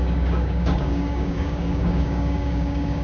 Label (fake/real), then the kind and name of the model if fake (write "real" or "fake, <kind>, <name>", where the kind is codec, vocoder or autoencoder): fake, codec, DAC